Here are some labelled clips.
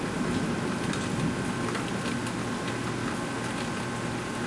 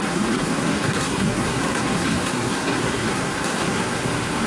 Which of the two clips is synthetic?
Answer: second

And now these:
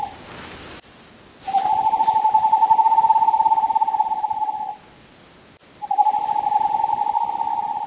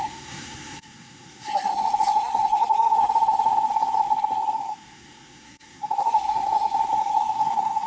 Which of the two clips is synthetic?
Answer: second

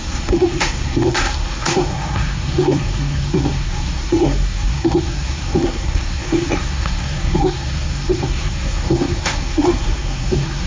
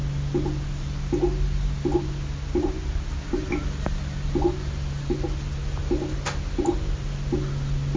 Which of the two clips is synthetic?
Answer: first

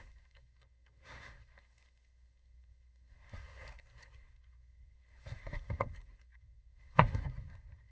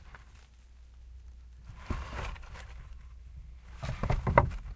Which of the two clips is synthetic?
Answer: first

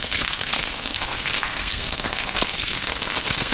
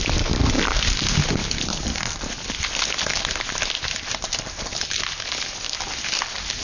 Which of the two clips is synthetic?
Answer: first